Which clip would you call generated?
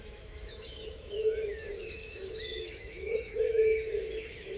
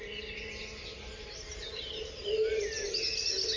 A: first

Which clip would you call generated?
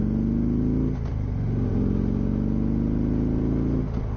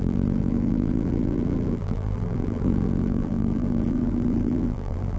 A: second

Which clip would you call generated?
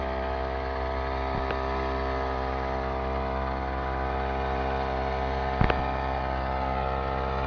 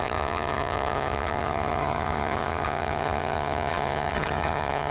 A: second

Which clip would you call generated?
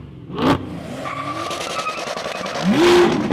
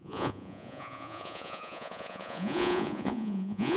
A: second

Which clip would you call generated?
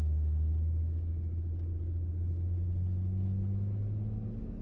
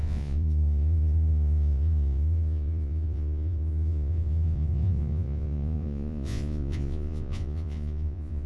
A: second